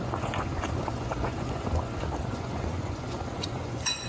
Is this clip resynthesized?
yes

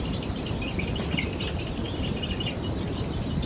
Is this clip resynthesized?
no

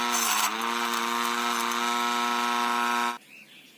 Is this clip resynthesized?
no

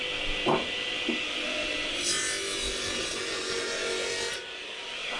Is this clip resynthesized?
no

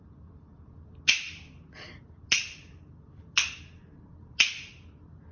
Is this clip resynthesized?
no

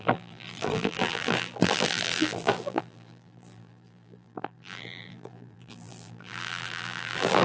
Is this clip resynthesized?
yes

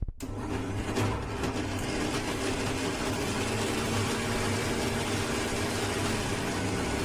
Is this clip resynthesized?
no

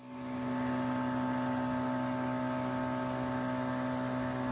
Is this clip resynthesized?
no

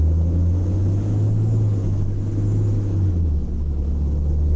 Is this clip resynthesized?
yes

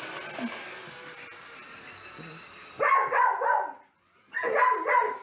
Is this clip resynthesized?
no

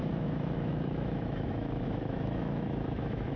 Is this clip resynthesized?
yes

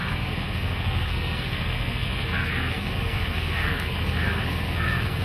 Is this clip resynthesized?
yes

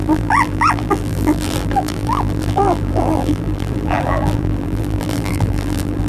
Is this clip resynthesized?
yes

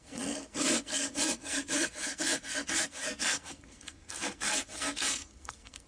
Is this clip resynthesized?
yes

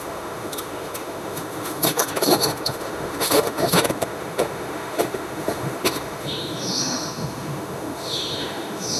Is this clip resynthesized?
yes